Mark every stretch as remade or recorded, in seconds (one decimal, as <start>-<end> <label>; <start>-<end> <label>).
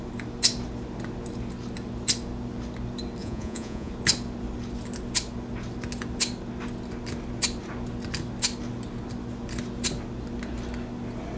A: 0.0-3.2 recorded; 3.2-3.9 remade; 3.9-11.4 recorded